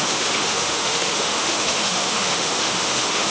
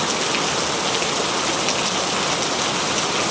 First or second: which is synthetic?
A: first